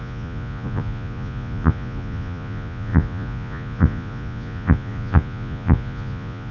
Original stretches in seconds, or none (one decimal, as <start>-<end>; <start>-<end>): none